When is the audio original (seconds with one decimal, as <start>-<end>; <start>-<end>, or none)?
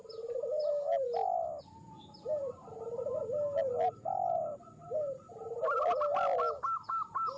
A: 0.0-6.1; 6.9-7.4